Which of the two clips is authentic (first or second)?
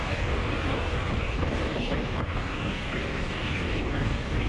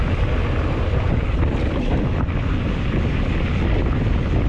second